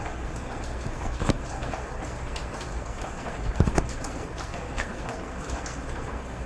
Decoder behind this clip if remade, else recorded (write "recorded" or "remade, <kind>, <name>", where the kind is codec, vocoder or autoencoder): remade, codec, SNAC